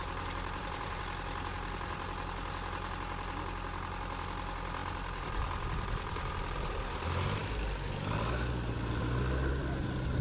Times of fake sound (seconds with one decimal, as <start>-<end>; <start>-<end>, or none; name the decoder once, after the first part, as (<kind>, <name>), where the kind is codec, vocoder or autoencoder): 0.0-1.0 (vocoder, BigVGAN v2)